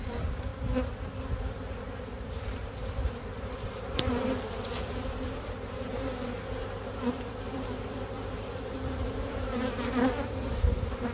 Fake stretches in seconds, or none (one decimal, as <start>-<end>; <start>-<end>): 0.0-0.5; 1.5-11.1